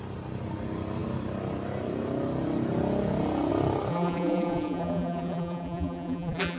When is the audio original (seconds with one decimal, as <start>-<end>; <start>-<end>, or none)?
0.0-3.9